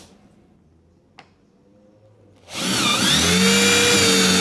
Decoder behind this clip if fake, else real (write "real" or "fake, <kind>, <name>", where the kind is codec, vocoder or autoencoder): real